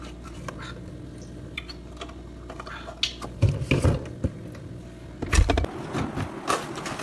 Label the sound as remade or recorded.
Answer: recorded